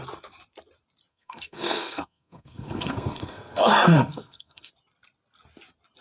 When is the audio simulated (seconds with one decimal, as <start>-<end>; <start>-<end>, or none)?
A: 1.1-4.7